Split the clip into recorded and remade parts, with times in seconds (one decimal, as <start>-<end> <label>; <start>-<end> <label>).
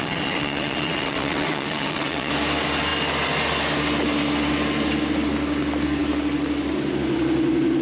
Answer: 0.0-2.3 remade; 2.3-7.8 recorded